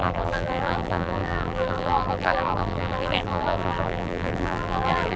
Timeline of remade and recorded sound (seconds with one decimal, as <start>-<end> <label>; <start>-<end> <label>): 0.0-5.2 remade

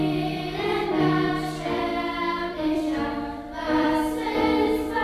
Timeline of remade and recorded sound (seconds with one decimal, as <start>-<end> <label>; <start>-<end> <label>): 0.0-1.9 remade; 1.9-2.5 recorded; 2.5-5.0 remade

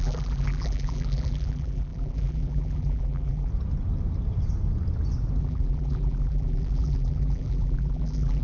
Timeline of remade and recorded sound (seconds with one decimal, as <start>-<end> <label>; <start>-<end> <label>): 0.0-3.5 remade; 3.5-5.4 recorded; 5.4-8.4 remade

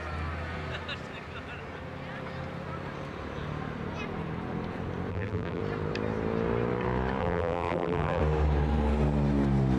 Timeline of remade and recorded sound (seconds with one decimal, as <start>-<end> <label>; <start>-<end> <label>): 0.0-5.1 recorded; 5.1-5.6 remade; 5.6-7.2 recorded; 7.2-8.2 remade; 8.2-9.8 recorded

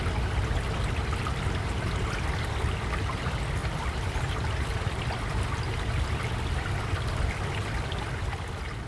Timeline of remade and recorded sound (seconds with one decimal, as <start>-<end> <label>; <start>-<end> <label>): 0.0-3.6 recorded; 3.6-8.2 remade; 8.2-8.9 recorded

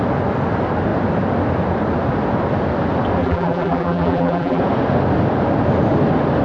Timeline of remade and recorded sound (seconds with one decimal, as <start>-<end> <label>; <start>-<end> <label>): 0.0-3.2 recorded; 3.2-4.6 remade; 4.6-6.4 recorded